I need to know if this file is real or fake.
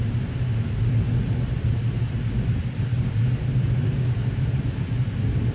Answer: real